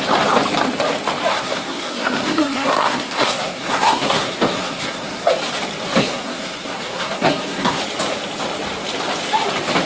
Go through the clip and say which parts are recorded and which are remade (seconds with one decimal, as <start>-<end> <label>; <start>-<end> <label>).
0.0-1.3 recorded; 1.3-5.3 remade; 5.3-6.0 recorded; 6.0-7.8 remade; 7.8-9.9 recorded